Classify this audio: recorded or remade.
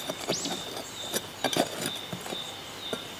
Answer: recorded